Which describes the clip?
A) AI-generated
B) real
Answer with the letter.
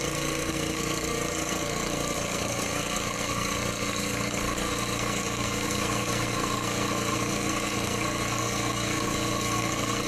A